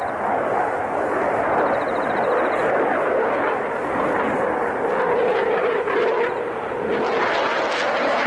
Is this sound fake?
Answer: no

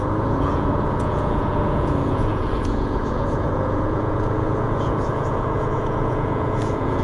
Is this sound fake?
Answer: yes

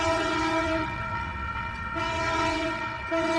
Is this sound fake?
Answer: yes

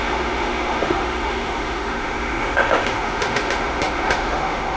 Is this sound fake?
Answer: yes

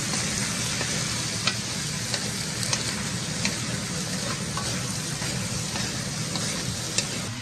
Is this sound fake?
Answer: no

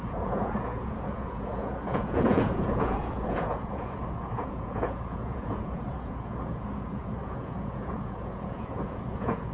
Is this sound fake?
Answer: yes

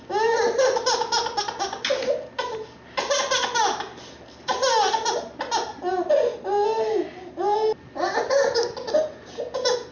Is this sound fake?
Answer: no